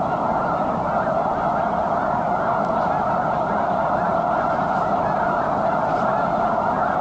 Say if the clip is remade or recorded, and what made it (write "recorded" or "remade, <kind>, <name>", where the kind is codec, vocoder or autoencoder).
recorded